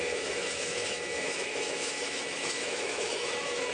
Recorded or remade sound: remade